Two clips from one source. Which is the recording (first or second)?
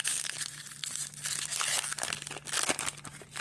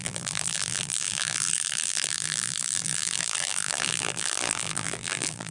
first